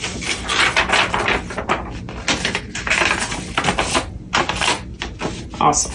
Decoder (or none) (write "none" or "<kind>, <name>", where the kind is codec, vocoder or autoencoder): none